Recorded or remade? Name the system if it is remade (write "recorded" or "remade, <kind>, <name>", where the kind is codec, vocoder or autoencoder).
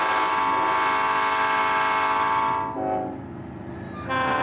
recorded